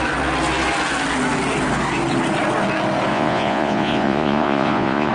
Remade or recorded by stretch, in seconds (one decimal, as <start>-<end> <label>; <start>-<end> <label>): 0.0-3.1 recorded; 3.1-5.1 remade